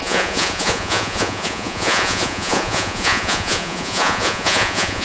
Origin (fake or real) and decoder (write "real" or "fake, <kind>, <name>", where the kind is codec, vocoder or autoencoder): fake, vocoder, Vocos